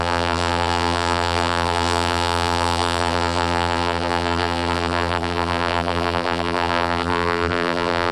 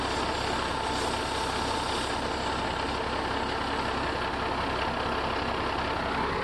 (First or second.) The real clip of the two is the second